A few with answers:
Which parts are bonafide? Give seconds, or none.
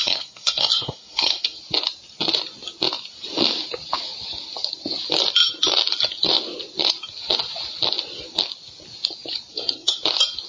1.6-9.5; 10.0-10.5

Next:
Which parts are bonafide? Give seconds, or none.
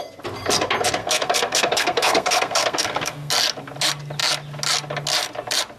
0.0-1.0; 3.3-5.8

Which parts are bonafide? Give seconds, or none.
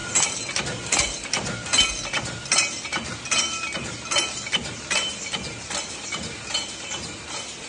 0.0-7.7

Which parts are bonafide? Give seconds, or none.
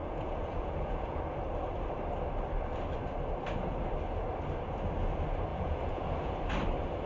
1.2-5.5; 6.3-7.1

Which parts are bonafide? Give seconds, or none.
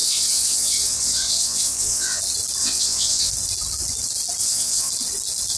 2.2-2.6; 3.3-4.4; 4.9-5.6